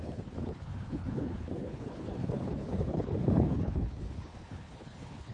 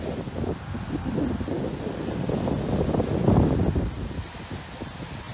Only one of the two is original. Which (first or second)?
second